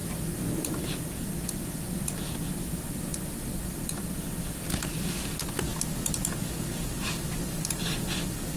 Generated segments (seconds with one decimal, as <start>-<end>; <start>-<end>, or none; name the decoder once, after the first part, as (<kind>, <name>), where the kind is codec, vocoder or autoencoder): 0.0-0.7 (vocoder, BigVGAN v2)